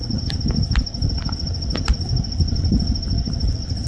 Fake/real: real